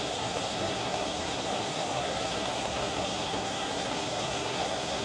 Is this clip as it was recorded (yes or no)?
no